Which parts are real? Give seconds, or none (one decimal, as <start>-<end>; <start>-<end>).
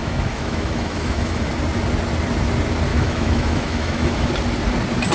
1.5-2.9; 4.3-5.1